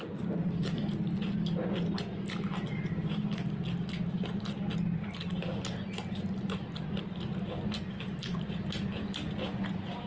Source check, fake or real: real